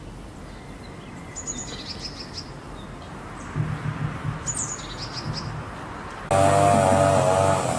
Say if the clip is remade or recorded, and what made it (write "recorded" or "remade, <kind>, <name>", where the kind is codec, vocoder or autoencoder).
recorded